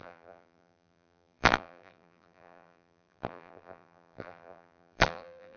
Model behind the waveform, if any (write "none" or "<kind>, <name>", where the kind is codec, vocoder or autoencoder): vocoder, BigVGAN v2